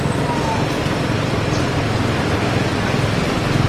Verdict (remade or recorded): recorded